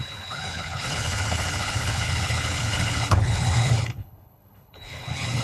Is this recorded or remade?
remade